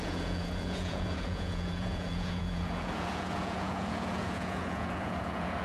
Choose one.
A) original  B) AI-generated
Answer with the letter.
B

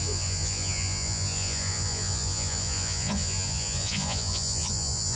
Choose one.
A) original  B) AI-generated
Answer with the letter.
B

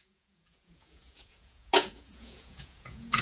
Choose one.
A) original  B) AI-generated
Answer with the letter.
B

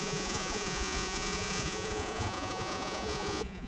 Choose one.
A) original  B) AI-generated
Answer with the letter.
B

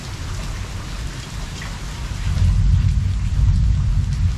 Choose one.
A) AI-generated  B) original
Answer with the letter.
B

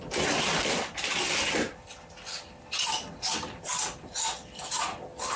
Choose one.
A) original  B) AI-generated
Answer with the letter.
A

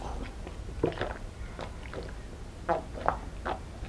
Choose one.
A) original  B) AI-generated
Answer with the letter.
A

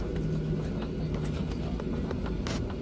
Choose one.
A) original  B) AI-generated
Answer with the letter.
A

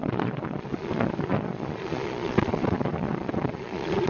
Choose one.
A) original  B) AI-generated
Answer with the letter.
B